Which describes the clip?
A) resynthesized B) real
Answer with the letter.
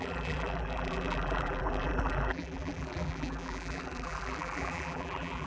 A